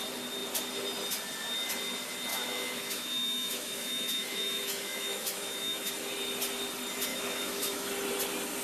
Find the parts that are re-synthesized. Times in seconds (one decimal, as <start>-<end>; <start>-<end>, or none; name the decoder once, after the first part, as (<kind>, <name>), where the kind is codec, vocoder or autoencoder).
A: 2.3-5.9 (autoencoder, DAC-VAE); 7.1-7.9

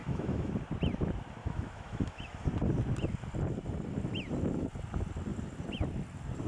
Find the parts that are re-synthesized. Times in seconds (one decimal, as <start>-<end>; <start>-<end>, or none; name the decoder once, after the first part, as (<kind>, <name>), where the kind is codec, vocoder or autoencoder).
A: 0.0-0.5 (autoencoder, DAC-VAE); 1.4-2.5

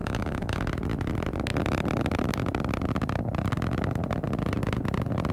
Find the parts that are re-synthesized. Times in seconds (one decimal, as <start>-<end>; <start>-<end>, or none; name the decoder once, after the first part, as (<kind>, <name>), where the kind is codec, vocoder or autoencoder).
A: 0.0-0.6 (autoencoder, DAC-VAE)

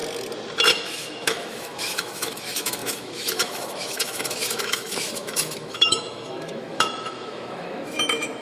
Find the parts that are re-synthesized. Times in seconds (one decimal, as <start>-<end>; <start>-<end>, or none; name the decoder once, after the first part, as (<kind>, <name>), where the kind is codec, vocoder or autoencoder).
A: 0.7-8.4 (autoencoder, DAC-VAE)

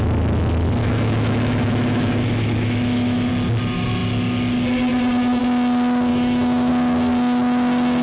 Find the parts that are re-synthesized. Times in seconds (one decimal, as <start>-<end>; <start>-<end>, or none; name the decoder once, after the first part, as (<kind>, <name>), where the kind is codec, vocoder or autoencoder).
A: 0.8-3.3 (autoencoder, DAC-VAE); 6.1-6.7

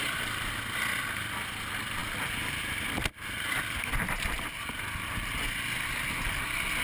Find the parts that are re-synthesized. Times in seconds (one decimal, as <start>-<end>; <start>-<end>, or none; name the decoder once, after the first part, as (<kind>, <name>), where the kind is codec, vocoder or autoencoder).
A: none

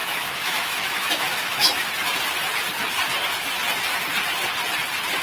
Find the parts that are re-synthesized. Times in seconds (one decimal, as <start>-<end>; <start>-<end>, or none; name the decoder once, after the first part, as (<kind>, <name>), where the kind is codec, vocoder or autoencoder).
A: 0.0-1.9 (autoencoder, DAC-VAE)